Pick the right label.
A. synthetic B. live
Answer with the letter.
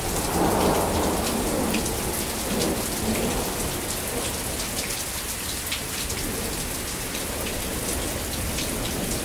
B